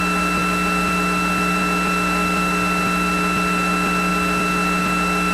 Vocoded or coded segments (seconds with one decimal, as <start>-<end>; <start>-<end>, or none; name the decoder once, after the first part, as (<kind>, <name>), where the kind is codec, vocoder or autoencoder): none